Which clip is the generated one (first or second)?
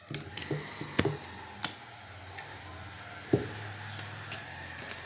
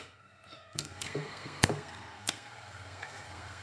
second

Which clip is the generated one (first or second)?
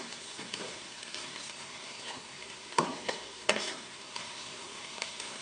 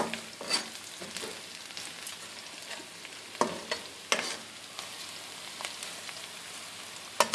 first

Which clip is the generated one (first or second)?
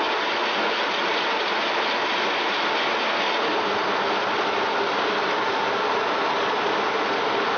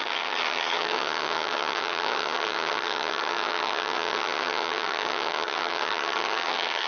second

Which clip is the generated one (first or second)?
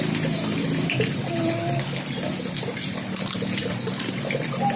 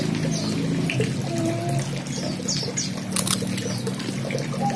first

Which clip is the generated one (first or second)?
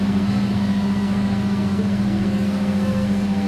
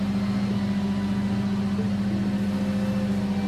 first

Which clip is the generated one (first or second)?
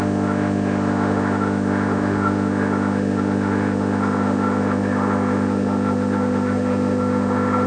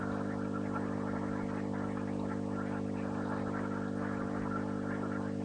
first